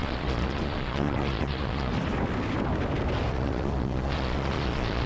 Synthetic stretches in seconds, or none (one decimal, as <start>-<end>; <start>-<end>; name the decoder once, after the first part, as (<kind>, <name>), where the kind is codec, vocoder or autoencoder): 0.0-1.9 (vocoder, Vocos); 3.3-5.1